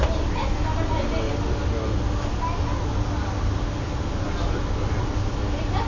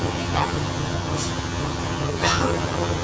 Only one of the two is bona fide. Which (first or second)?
first